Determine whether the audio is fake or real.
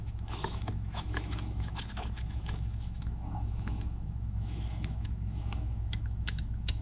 fake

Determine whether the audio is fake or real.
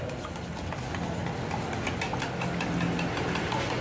real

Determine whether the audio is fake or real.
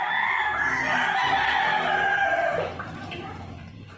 real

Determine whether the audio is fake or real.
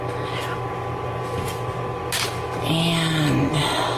real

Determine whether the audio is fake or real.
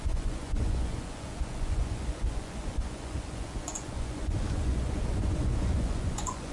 fake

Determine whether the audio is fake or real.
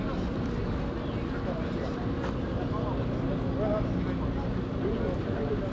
real